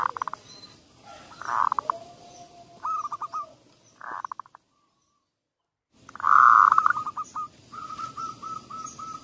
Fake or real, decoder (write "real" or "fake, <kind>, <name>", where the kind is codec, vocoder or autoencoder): real